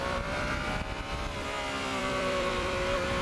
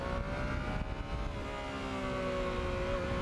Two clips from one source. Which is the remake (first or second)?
first